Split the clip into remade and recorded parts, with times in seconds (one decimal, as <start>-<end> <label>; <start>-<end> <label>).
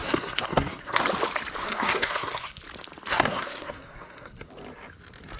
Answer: 0.0-1.0 remade; 1.0-1.6 recorded; 1.6-2.6 remade; 2.6-3.1 recorded; 3.1-4.5 remade; 4.5-5.4 recorded